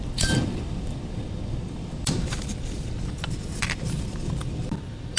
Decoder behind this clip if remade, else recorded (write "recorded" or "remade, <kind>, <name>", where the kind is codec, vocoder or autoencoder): remade, vocoder, BigVGAN v2